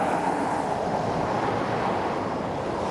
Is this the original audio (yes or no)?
yes